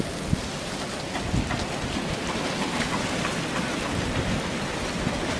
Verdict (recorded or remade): recorded